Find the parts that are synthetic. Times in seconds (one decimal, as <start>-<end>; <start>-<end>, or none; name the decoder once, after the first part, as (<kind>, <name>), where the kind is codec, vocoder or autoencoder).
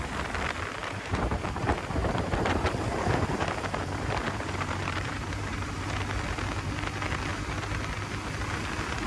0.8-1.3 (vocoder, BigVGAN v2); 2.0-5.8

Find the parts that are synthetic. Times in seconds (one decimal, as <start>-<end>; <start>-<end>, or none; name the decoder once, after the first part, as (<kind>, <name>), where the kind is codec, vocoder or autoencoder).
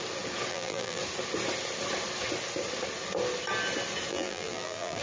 0.5-1.0 (vocoder, BigVGAN v2); 4.1-5.0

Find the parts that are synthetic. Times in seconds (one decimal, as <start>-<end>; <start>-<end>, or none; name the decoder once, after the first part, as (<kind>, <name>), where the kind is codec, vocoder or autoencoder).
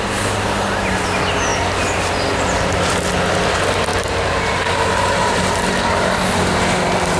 3.9-5.4 (vocoder, BigVGAN v2)